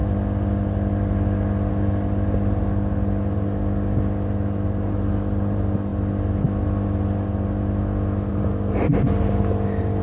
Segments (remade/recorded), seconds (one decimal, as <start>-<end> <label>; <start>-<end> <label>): 0.0-10.0 recorded